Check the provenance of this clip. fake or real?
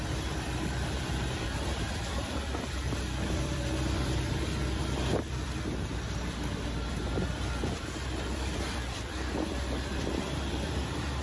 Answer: fake